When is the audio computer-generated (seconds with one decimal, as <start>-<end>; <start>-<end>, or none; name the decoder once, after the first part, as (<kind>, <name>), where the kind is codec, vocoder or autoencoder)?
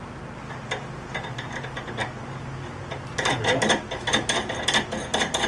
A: none